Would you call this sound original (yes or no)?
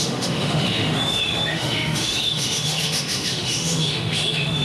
no